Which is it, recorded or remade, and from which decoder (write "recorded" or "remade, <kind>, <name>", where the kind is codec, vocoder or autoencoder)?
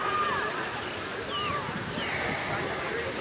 recorded